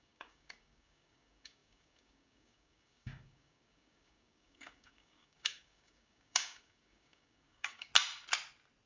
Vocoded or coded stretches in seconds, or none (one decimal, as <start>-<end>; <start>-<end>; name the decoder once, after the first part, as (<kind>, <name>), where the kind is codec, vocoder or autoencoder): 0.0-7.9 (codec, DAC)